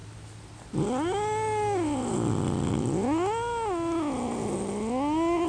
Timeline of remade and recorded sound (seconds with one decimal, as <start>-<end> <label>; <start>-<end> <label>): 0.0-5.5 recorded